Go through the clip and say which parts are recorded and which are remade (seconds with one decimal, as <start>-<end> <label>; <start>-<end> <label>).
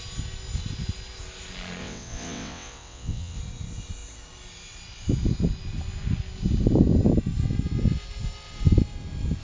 0.0-1.8 recorded; 1.8-3.4 remade; 3.4-9.4 recorded